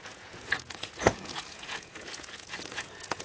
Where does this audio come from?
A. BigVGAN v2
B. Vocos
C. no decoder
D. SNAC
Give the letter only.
B